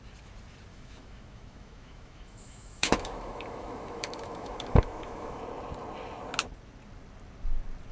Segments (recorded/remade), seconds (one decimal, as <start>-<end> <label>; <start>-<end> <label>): 0.0-0.7 recorded; 0.7-5.4 remade; 5.4-7.9 recorded